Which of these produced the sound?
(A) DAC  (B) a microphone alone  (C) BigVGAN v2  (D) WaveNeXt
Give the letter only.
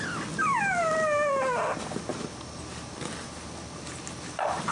B